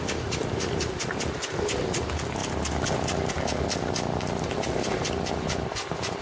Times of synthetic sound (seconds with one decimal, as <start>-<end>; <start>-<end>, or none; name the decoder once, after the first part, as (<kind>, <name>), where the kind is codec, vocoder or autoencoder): none